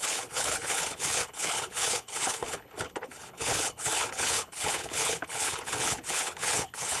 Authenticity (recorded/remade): remade